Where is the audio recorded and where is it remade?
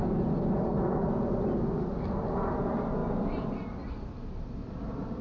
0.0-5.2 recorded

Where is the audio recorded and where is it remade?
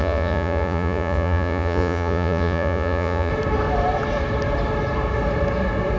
0.0-3.3 remade; 3.3-6.0 recorded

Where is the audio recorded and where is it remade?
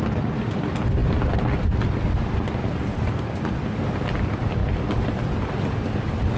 0.0-6.4 recorded